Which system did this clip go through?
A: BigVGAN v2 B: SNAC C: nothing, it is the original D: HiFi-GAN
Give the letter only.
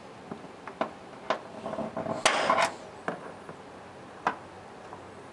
C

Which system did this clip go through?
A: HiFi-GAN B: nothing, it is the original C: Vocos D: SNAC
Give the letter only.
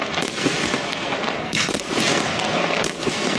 D